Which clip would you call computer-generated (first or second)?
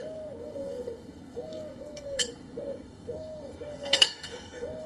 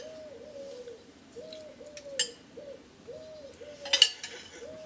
first